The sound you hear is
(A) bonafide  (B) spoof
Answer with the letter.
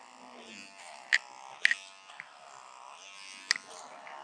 A